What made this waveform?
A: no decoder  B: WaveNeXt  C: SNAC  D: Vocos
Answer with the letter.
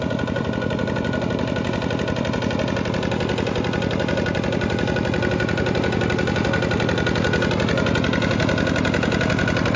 A